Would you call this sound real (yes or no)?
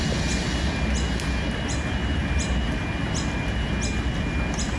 yes